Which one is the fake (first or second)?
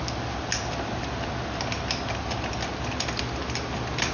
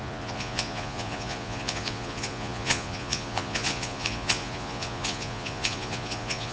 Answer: second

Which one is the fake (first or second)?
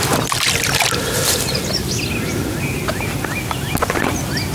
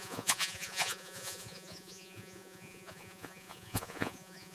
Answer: second